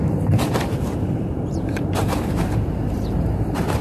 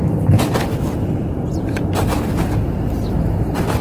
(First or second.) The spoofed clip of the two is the first